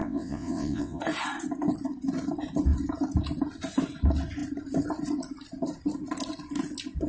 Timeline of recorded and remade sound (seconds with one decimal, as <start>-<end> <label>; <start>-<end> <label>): 0.0-1.0 remade; 1.0-7.1 recorded